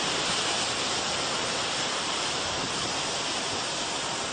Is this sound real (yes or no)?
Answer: yes